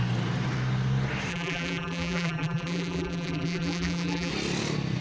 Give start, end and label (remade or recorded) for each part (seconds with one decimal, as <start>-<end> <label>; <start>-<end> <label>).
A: 0.0-1.3 recorded; 1.3-4.3 remade; 4.3-5.0 recorded

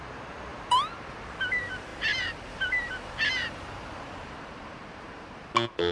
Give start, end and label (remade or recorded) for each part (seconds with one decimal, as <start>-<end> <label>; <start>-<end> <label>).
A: 0.0-0.5 recorded; 0.5-1.0 remade; 1.0-1.9 recorded; 1.9-5.4 remade; 5.4-5.9 recorded